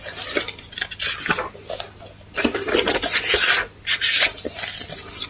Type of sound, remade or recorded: recorded